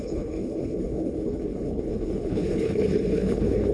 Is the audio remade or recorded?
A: remade